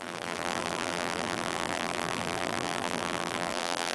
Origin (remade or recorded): remade